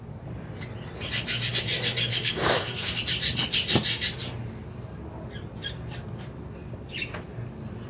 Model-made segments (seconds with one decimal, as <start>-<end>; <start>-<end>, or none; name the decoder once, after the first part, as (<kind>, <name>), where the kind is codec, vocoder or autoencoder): 2.1-2.9 (codec, SNAC)